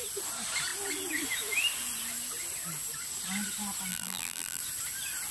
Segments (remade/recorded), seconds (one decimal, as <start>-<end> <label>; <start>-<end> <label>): 0.0-3.9 recorded; 3.9-4.6 remade; 4.6-5.3 recorded